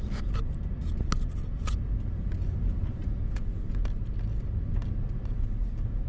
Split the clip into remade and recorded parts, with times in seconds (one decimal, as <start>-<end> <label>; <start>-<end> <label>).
0.0-2.5 recorded; 2.5-3.2 remade; 3.2-6.1 recorded